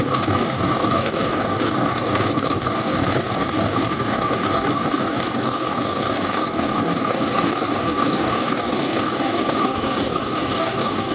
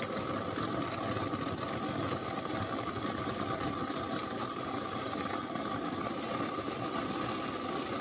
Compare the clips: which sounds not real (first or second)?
first